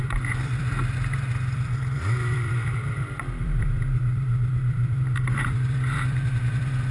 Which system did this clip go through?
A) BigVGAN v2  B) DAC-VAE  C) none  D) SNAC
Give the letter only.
A